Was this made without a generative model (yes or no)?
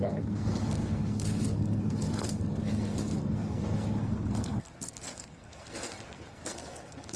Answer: no